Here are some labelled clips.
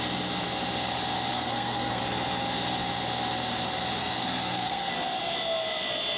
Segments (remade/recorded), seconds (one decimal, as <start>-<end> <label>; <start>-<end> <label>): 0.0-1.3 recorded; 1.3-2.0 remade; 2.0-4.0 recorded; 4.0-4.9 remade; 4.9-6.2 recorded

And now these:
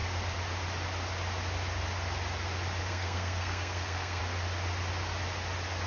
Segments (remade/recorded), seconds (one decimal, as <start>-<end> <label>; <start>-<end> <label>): 0.0-2.9 recorded; 2.9-4.2 remade; 4.2-5.9 recorded

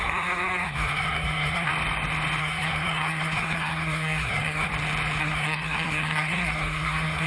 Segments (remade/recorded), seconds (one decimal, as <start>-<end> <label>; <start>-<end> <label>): 0.0-1.7 remade; 1.7-2.4 recorded; 2.4-4.7 remade; 4.7-5.2 recorded; 5.2-7.3 remade